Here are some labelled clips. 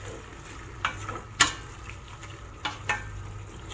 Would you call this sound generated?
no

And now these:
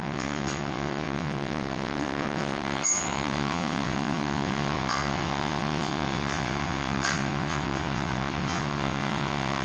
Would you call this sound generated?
yes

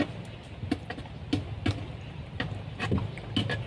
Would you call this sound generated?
no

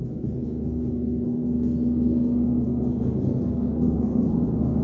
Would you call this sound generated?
yes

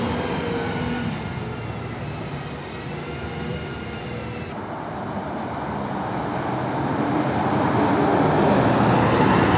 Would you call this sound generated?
no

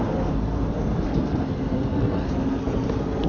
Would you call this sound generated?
yes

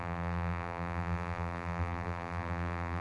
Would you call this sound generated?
yes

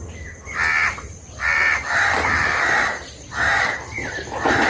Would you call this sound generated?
no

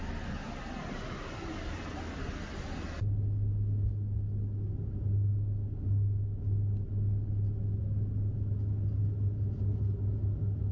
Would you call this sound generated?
no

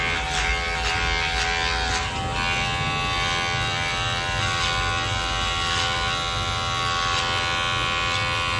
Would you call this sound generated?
no